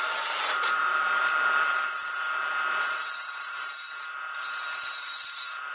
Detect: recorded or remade remade